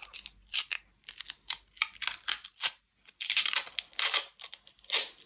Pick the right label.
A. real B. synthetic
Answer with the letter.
A